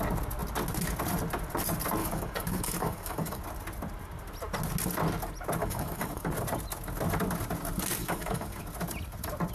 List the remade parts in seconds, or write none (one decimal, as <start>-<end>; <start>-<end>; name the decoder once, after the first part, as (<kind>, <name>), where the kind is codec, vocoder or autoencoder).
2.0-3.4 (codec, DAC); 5.6-6.3; 8.0-8.6